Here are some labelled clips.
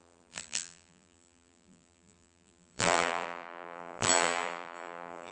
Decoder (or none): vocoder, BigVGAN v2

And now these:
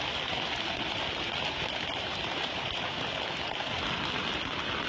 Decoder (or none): vocoder, BigVGAN v2